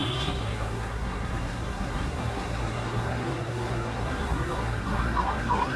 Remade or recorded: remade